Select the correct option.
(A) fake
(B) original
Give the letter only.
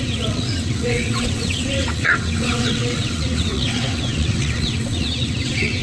A